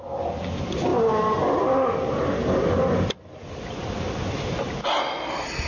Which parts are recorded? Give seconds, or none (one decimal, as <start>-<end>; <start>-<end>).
0.0-5.7